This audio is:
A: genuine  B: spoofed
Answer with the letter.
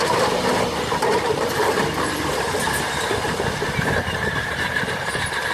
B